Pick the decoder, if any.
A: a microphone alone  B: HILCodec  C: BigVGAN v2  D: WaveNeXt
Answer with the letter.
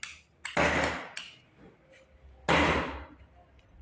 A